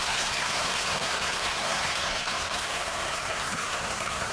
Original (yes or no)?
no